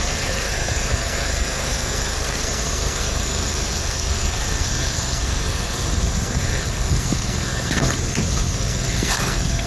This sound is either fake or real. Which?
fake